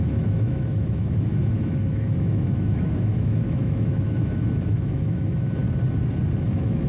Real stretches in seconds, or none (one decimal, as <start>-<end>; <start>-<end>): 5.6-6.4